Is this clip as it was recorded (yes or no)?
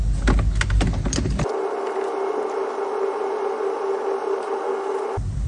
yes